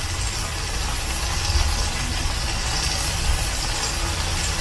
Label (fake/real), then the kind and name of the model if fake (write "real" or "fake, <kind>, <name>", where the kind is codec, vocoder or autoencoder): real